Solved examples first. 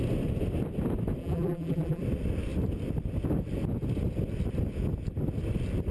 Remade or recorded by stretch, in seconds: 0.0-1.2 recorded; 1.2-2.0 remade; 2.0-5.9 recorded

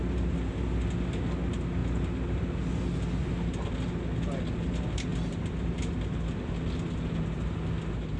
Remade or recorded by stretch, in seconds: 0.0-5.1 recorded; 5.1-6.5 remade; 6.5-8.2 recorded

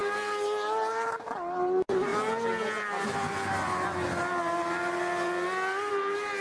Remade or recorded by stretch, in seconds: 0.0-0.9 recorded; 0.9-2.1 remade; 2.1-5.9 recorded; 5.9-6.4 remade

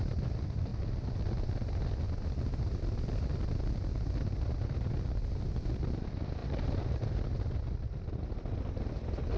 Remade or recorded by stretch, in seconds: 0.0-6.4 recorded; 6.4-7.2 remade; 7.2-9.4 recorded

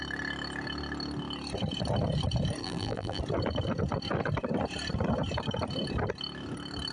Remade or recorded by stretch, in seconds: 0.0-2.6 recorded; 2.6-3.2 remade; 3.2-6.9 recorded

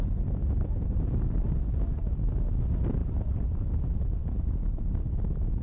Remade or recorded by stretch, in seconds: 0.0-3.0 recorded; 3.0-4.2 remade; 4.2-5.6 recorded